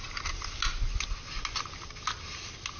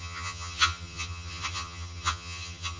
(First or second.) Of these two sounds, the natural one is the first